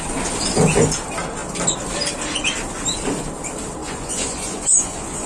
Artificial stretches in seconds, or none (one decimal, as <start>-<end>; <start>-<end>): 3.8-5.3